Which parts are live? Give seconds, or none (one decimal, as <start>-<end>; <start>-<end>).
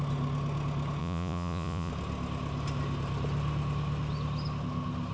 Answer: 0.0-1.0; 1.9-5.1